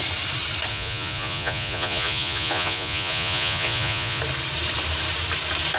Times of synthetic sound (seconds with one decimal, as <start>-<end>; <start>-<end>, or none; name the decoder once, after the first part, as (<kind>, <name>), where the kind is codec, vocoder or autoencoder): 0.7-4.2 (vocoder, Vocos)